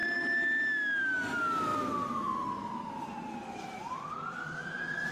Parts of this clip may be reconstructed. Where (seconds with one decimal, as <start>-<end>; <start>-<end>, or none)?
none